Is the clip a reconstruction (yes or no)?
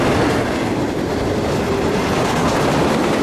no